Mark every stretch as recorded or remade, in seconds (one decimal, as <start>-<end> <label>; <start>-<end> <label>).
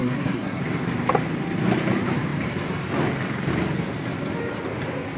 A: 0.0-0.6 remade; 0.6-5.2 recorded